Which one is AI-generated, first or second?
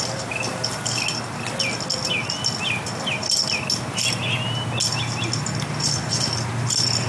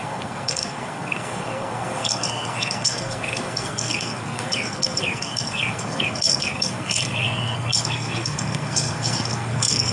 second